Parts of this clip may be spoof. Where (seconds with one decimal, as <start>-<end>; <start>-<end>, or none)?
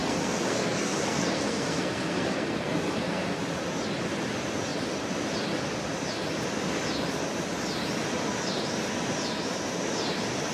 0.0-3.4